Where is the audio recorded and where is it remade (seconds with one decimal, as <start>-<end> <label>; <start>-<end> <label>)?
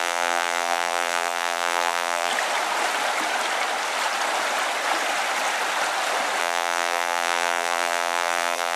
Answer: 0.0-2.3 remade; 2.3-6.4 recorded; 6.4-8.8 remade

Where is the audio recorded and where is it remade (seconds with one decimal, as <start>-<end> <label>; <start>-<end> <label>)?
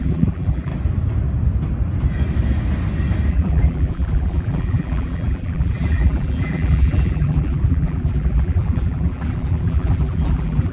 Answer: 0.0-0.7 remade; 0.7-3.3 recorded; 3.3-10.7 remade